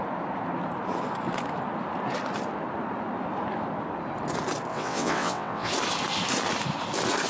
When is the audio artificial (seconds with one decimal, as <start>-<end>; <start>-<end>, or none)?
4.7-5.7